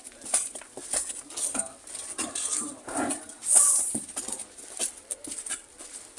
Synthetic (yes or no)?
no